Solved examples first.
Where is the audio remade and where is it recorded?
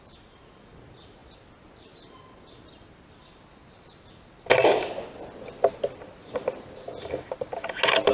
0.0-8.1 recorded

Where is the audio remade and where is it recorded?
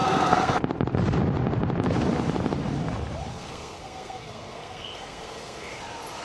0.0-0.6 remade; 0.6-3.3 recorded; 3.3-5.8 remade; 5.8-6.2 recorded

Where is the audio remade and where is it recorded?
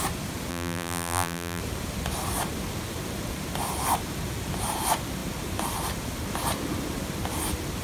0.0-0.5 recorded; 0.5-1.6 remade; 1.6-7.8 recorded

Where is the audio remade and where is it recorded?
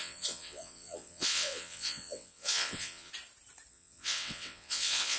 0.0-3.1 remade; 3.1-3.7 recorded; 3.7-5.2 remade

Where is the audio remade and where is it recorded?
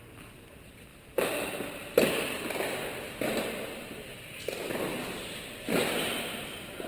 0.0-6.9 recorded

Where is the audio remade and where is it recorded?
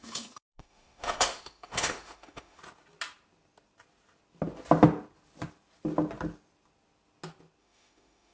0.0-2.6 remade; 2.6-7.6 recorded; 7.6-8.3 remade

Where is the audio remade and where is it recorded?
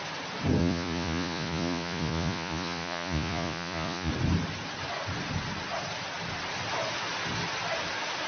0.0-0.6 recorded; 0.6-4.1 remade; 4.1-8.3 recorded